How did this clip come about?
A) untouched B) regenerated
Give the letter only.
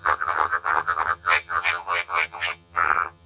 B